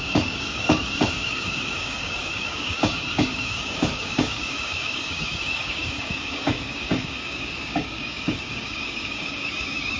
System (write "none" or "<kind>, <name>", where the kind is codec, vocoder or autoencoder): codec, DAC